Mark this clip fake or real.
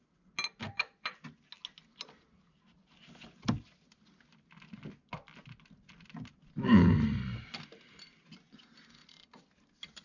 real